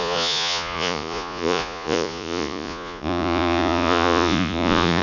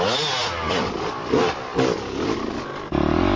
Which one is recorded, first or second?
second